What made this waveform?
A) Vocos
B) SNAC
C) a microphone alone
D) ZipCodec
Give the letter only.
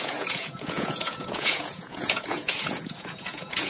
A